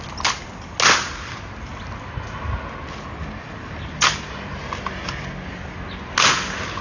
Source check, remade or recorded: recorded